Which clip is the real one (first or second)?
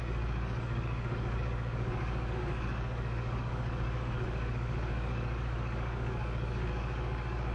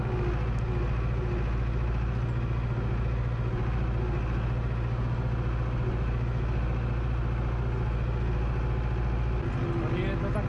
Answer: second